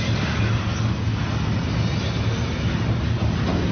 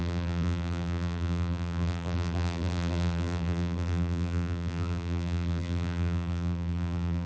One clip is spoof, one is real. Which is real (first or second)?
first